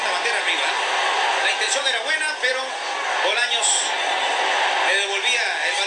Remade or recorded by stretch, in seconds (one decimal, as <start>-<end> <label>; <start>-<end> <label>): 0.0-5.9 recorded